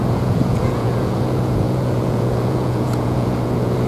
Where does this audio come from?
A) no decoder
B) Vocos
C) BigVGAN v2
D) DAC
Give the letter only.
B